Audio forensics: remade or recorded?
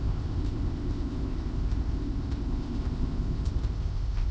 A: remade